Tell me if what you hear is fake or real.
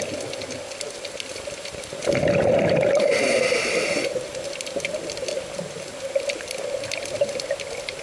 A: real